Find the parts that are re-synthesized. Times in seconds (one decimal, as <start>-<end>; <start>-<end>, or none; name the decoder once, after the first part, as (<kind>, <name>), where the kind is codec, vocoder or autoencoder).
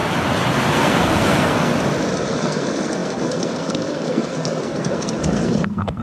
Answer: 0.7-1.7 (codec, SNAC); 2.3-6.0